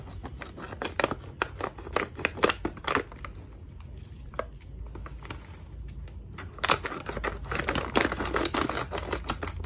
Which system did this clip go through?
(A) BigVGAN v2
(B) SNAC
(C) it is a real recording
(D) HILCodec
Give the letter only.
C